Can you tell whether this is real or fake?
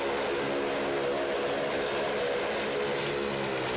real